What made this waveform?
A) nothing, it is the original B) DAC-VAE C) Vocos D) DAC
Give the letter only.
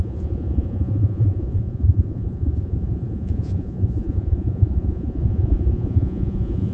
C